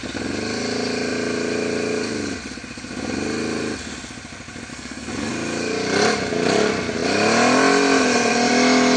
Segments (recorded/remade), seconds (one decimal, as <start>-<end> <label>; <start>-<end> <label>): 0.0-4.7 recorded; 4.7-5.3 remade; 5.3-9.0 recorded